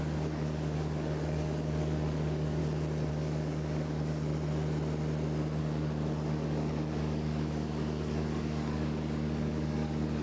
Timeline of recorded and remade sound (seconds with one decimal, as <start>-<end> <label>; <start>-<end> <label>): 0.0-2.6 remade; 2.6-3.1 recorded; 3.1-4.3 remade; 4.3-5.6 recorded; 5.6-10.2 remade